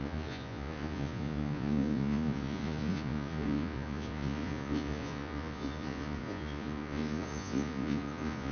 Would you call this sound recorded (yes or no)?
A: no